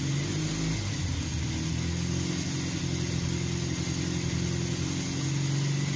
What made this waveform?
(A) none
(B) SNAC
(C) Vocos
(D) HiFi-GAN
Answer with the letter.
A